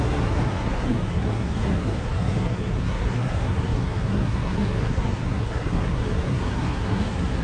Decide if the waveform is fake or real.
fake